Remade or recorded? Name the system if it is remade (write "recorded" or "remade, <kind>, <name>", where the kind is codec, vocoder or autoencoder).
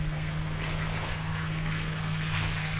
remade, codec, SNAC